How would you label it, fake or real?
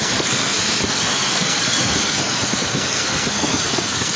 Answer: fake